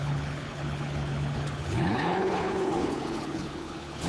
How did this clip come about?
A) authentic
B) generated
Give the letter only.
B